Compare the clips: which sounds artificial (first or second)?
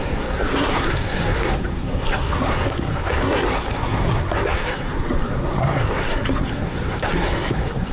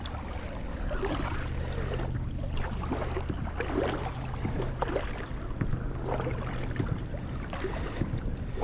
first